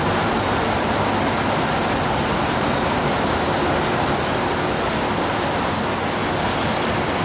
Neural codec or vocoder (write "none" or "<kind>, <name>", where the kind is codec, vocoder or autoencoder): none